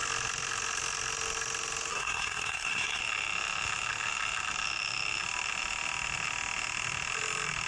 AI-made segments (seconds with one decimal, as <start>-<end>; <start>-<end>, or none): 1.9-3.0